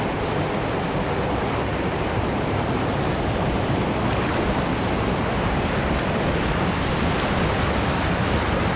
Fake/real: real